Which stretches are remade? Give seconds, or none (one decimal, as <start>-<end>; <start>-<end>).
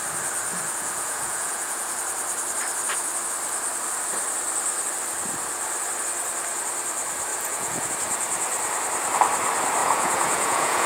0.5-1.8; 7.3-7.9; 9.8-10.9